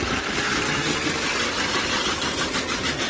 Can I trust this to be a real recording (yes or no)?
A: yes